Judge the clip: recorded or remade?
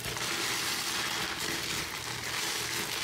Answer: recorded